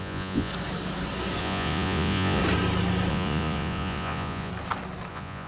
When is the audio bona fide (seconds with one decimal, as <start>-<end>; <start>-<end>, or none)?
0.5-1.4; 2.4-3.1; 4.5-5.1